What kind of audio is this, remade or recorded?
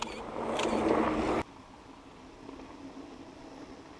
recorded